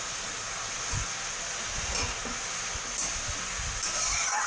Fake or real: real